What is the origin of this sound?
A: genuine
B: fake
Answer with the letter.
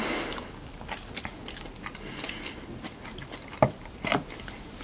A